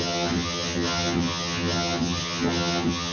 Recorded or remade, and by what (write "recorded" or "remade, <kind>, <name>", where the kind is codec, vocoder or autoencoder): remade, vocoder, HiFi-GAN